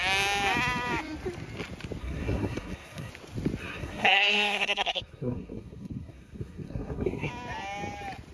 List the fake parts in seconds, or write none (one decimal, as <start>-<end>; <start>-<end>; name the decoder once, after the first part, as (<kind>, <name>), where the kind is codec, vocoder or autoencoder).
2.0-3.1 (codec, SNAC); 3.6-7.3